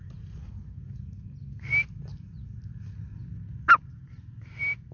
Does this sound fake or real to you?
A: real